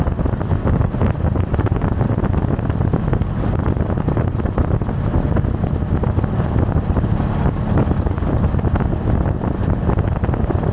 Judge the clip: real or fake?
real